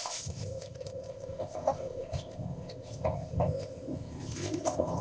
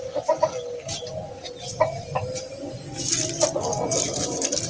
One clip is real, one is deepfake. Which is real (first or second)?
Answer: second